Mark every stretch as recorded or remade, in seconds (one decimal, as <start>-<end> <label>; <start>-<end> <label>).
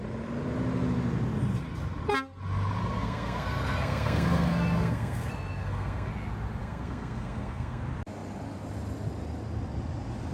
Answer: 0.0-2.8 recorded; 2.8-6.1 remade; 6.1-6.6 recorded; 6.6-7.8 remade; 7.8-10.3 recorded